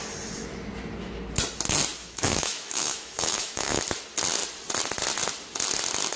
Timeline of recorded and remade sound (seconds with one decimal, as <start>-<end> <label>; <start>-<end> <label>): 0.0-2.0 recorded; 2.0-3.8 remade; 3.8-6.2 recorded